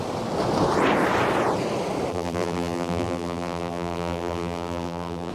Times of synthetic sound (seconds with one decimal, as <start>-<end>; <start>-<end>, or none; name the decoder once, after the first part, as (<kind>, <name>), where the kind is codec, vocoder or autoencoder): 2.1-5.3 (vocoder, BigVGAN v2)